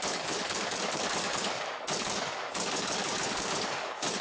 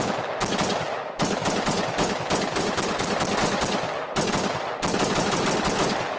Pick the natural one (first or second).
second